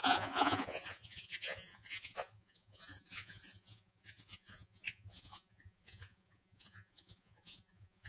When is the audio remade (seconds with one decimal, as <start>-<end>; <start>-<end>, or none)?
0.0-8.1